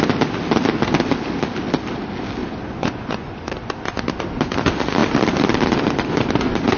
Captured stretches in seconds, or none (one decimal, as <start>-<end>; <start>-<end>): 0.0-2.4; 3.6-6.8